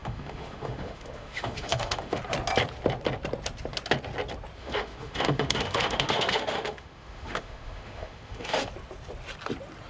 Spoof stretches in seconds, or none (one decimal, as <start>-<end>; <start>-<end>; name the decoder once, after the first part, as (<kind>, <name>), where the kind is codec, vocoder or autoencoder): 0.0-2.2 (autoencoder, DAC-VAE); 4.6-8.7